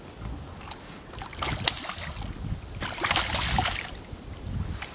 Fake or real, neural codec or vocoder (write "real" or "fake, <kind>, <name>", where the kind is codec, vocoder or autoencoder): real